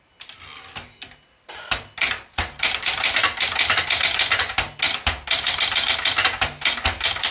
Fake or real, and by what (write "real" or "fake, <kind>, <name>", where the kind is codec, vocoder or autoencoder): real